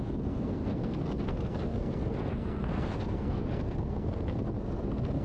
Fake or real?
fake